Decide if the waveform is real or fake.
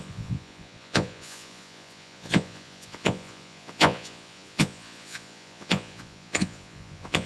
fake